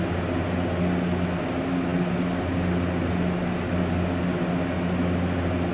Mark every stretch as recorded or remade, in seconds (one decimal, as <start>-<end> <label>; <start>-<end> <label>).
0.0-5.7 recorded